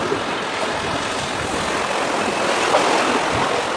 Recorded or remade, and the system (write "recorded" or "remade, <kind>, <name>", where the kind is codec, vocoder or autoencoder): recorded